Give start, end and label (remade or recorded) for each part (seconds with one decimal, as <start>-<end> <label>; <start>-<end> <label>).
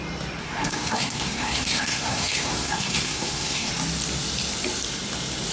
0.0-0.4 recorded; 0.4-3.7 remade; 3.7-5.5 recorded